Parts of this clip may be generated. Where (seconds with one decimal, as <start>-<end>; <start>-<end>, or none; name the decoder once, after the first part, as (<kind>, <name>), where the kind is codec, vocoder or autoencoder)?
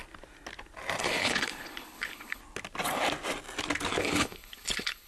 1.0-2.4 (codec, HILCodec); 4.0-5.1